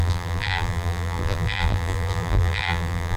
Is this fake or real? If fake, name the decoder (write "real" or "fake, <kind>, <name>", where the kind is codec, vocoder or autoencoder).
fake, vocoder, BigVGAN v2